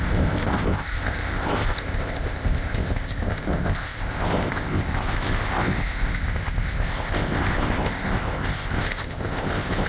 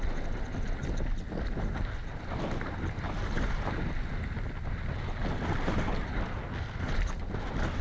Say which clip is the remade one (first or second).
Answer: first